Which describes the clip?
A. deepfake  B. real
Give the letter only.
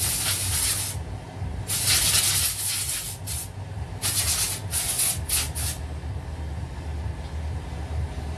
B